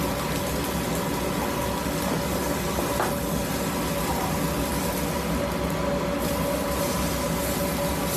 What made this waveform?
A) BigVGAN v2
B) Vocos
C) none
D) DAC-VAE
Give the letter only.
C